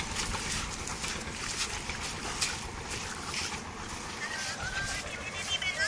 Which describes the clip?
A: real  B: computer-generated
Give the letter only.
A